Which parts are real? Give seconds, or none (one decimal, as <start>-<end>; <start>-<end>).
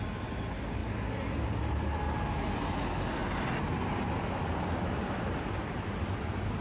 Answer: 0.0-6.6